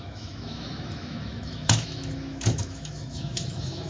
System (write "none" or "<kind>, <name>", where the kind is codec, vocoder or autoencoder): autoencoder, DAC-VAE